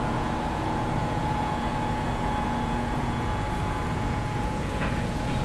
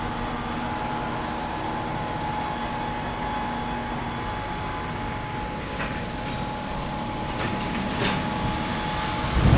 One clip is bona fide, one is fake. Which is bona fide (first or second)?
second